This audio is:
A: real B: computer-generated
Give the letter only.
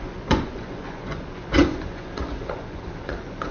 B